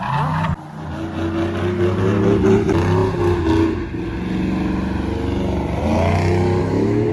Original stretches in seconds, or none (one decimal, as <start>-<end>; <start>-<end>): 0.0-6.6